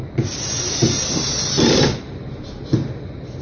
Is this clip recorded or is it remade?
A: recorded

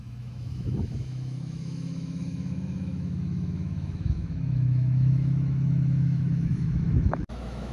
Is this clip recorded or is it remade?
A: remade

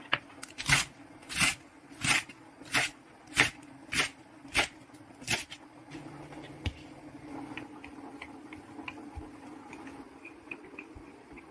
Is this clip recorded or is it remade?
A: recorded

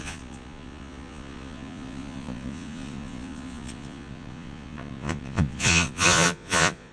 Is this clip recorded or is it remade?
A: remade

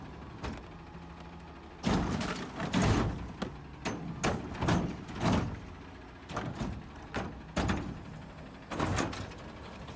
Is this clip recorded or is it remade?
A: recorded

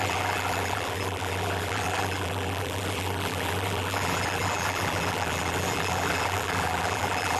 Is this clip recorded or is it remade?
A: remade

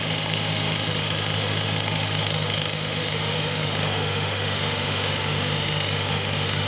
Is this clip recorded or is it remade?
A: remade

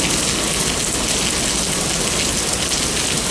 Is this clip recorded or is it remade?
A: recorded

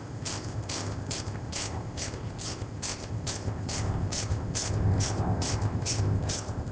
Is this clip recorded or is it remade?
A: remade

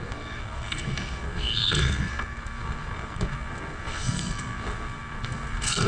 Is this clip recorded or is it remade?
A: remade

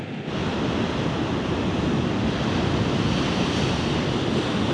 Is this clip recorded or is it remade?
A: recorded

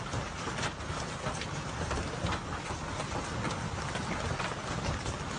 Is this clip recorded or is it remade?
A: recorded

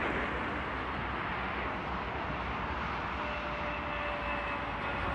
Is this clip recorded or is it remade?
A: recorded